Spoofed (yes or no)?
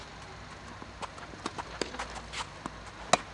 no